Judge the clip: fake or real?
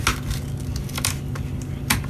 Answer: real